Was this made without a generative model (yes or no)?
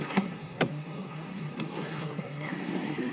no